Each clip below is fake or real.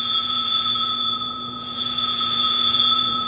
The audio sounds fake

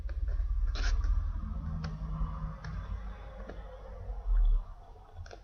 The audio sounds real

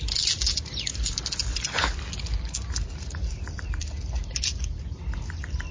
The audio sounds real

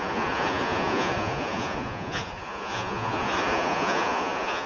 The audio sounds fake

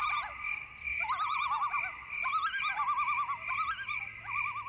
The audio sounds real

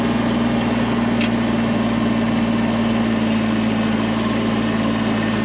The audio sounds real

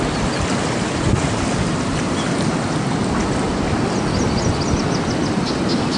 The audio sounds real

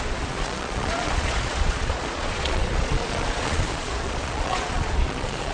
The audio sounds fake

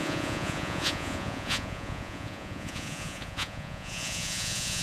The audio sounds fake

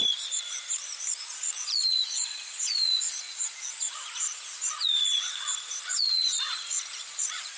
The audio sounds fake